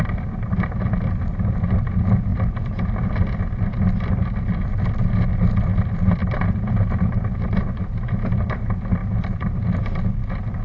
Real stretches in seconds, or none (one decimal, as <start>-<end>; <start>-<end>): 0.0-6.2; 8.6-9.0; 10.0-10.6

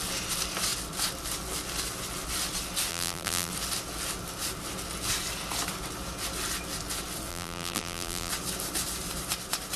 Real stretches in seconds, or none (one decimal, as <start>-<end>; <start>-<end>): 0.0-2.9; 3.5-7.3; 8.3-9.8

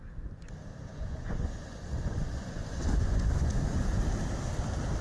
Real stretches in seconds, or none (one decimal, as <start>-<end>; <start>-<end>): 0.0-0.9; 3.8-5.0

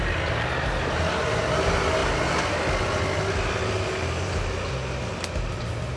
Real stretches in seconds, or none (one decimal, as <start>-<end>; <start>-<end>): 0.0-6.0

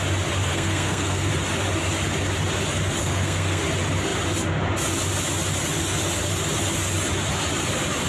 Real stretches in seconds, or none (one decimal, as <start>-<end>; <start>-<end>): 0.0-0.5; 1.3-3.0; 3.6-8.1